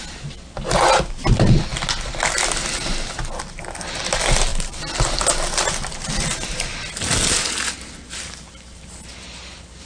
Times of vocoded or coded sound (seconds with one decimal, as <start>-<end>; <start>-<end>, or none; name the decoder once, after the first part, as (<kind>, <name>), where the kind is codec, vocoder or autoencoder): none